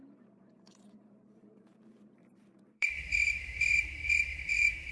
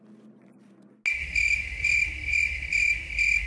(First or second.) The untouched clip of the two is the second